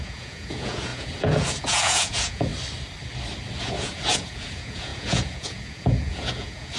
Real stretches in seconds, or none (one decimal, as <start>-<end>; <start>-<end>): 2.5-3.6